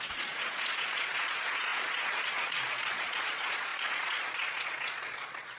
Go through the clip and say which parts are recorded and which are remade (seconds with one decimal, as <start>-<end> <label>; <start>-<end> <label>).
0.0-5.6 remade